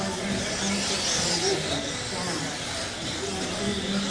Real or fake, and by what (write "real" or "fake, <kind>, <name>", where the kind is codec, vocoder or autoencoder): real